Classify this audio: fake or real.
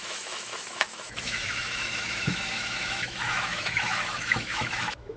fake